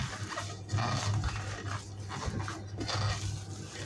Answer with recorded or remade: recorded